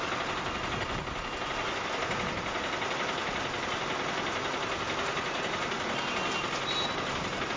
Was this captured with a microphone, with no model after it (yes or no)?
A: yes